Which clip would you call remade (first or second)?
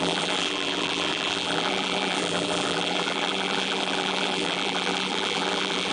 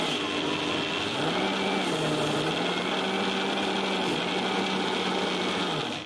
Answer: first